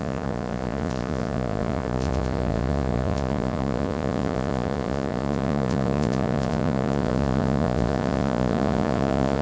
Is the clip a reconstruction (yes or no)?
yes